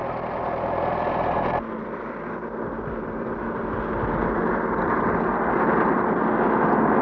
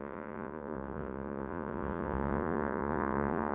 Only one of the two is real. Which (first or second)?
first